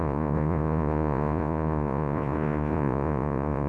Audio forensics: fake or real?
fake